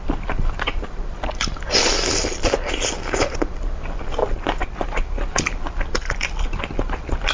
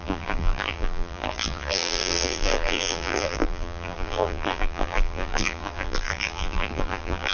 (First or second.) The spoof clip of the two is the second